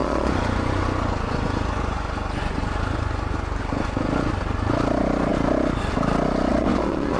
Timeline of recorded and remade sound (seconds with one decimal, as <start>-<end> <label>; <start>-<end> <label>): 0.0-4.3 remade; 4.3-6.5 recorded; 6.5-7.2 remade